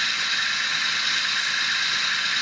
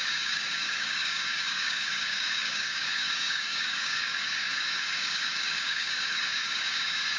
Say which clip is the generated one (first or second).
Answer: second